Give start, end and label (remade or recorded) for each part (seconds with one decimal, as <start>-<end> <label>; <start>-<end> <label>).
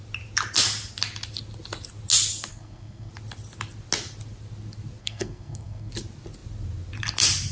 0.0-2.5 recorded; 2.5-3.1 remade; 3.1-5.0 recorded; 5.0-5.9 remade; 5.9-7.5 recorded